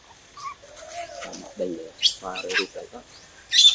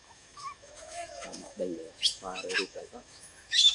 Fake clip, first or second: second